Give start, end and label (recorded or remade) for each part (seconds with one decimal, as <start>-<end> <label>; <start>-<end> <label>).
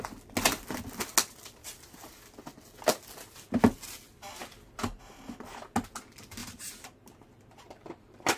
0.0-1.6 recorded; 1.6-2.1 remade; 2.1-6.4 recorded; 6.4-8.4 remade